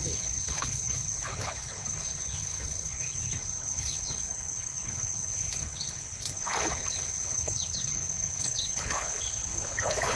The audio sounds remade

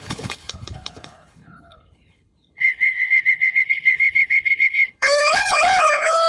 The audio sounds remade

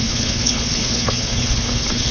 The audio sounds remade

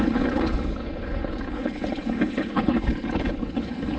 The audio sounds remade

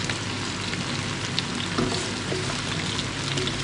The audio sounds recorded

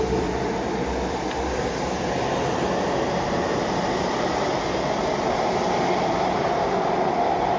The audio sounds recorded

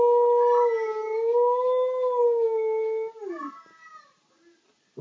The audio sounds recorded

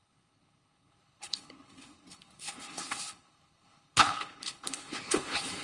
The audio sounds remade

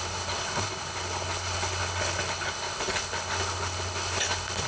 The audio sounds remade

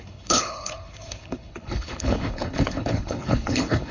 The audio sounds remade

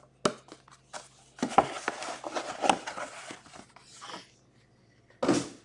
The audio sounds recorded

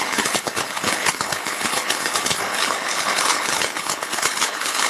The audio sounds remade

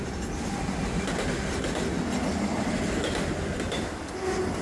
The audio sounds recorded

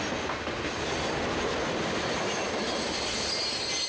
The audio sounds recorded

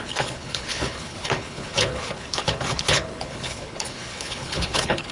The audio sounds remade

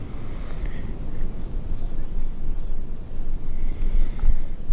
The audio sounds recorded